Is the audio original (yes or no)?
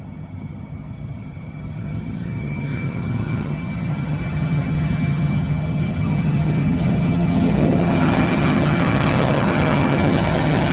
no